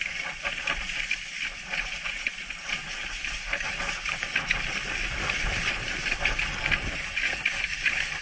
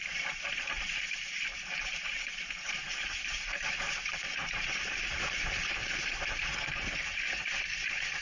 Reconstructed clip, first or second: second